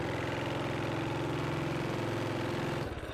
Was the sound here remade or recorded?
recorded